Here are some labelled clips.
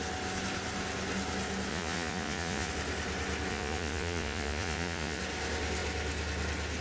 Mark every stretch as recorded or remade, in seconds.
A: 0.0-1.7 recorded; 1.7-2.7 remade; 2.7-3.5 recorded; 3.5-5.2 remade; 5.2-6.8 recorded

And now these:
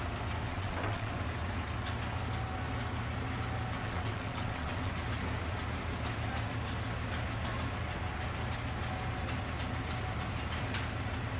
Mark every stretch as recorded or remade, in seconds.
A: 0.0-0.5 recorded; 0.5-1.1 remade; 1.1-3.8 recorded; 3.8-4.9 remade; 4.9-11.4 recorded

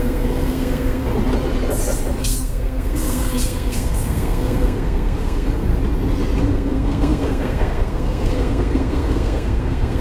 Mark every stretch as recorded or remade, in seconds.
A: 0.0-1.1 remade; 1.1-2.2 recorded; 2.2-5.7 remade; 5.7-6.5 recorded; 6.5-10.0 remade

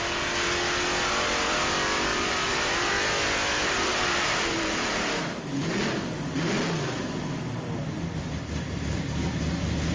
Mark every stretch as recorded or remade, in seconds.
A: 0.0-2.1 recorded; 2.1-2.9 remade; 2.9-3.9 recorded; 3.9-5.2 remade; 5.2-9.9 recorded

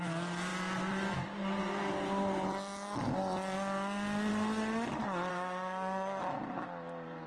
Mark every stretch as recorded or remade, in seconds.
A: 0.0-5.3 recorded; 5.3-6.2 remade; 6.2-7.3 recorded

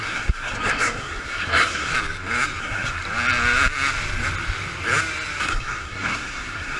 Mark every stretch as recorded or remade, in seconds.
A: 0.0-1.9 remade; 1.9-2.6 recorded; 2.6-3.0 remade; 3.0-5.4 recorded; 5.4-6.8 remade

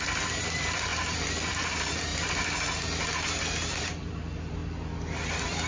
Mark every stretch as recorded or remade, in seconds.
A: 0.0-2.1 remade; 2.1-3.8 recorded; 3.8-4.6 remade; 4.6-5.2 recorded; 5.2-5.7 remade

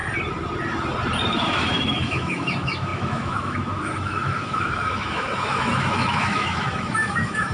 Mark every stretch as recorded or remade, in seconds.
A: 0.0-1.3 recorded; 1.3-7.5 remade